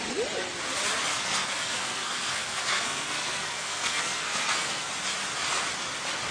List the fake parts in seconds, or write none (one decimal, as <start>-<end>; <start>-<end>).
1.1-4.9